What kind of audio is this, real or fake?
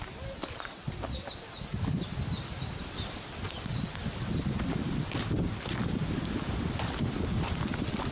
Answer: real